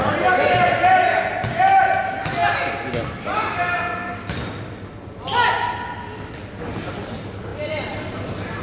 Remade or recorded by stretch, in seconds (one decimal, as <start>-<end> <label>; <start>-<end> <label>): 0.0-8.6 recorded